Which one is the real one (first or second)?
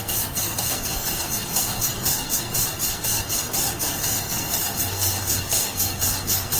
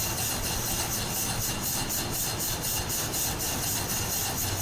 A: second